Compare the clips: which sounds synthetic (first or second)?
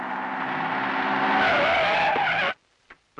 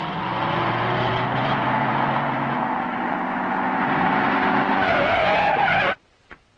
second